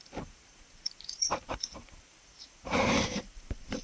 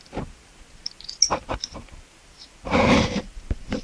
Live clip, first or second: second